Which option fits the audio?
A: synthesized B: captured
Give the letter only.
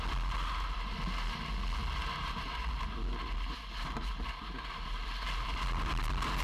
B